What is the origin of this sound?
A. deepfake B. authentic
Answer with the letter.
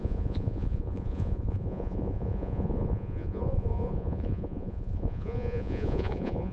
A